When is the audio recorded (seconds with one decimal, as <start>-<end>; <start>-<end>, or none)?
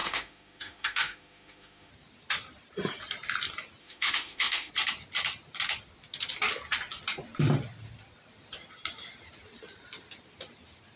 1.9-3.8; 4.7-11.0